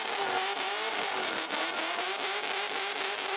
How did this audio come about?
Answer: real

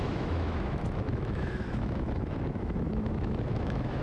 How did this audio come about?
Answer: fake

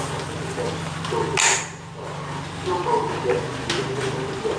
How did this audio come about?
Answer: real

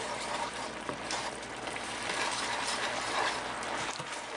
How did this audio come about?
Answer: fake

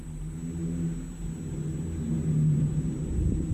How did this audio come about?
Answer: real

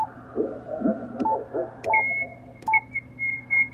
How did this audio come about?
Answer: real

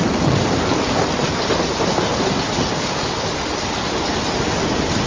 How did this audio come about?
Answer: real